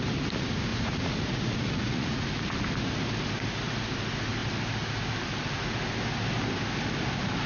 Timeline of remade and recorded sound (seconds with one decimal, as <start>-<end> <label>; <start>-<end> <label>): 0.0-0.7 recorded; 0.7-2.3 remade; 2.3-7.5 recorded